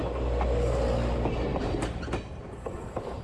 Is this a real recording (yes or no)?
yes